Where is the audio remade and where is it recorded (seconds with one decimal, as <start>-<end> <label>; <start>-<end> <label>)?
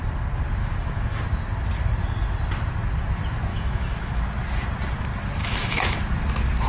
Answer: 0.0-0.6 recorded; 0.6-1.2 remade; 1.2-3.5 recorded; 3.5-4.2 remade; 4.2-5.4 recorded; 5.4-6.0 remade; 6.0-6.7 recorded